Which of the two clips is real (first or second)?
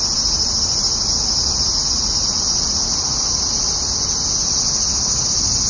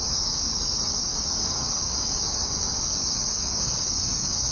first